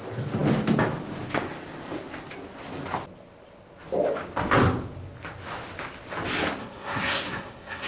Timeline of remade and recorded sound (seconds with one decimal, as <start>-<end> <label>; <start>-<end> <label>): 0.0-6.6 recorded; 6.6-7.9 remade